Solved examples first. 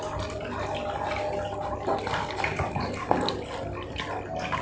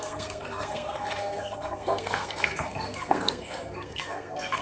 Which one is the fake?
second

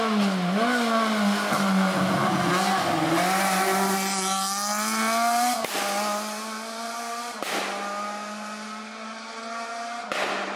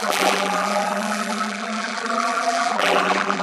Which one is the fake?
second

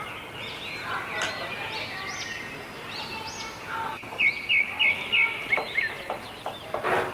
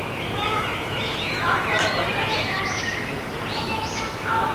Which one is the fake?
second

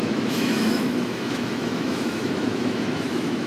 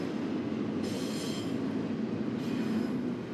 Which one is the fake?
first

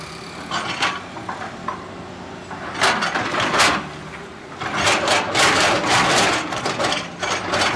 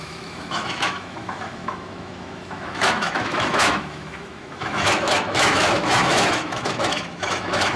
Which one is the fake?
second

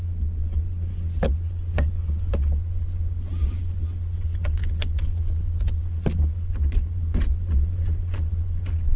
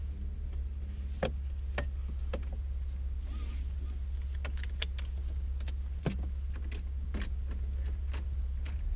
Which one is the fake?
first